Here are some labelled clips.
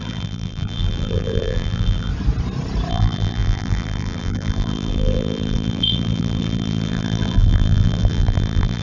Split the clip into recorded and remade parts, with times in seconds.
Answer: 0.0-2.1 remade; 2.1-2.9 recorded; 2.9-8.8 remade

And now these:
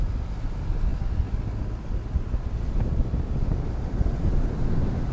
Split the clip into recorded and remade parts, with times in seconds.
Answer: 0.0-5.1 recorded